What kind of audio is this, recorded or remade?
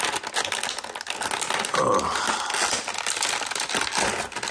recorded